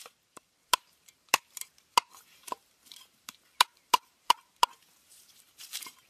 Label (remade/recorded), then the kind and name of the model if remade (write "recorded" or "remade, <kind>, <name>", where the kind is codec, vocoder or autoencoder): remade, vocoder, BigVGAN v2